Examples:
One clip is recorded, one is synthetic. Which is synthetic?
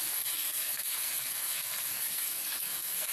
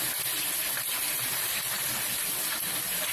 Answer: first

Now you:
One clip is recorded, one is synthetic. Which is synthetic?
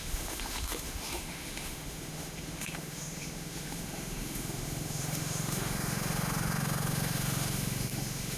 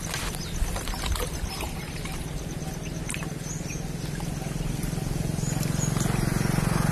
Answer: first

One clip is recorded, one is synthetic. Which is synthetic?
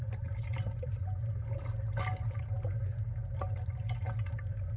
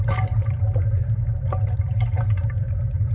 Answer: second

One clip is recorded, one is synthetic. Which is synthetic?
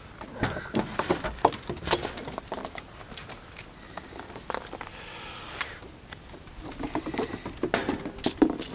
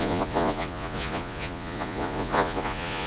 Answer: second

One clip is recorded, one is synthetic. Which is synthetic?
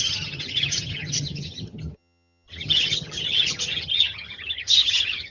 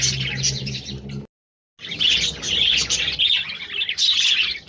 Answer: first